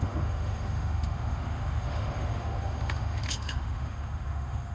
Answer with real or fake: fake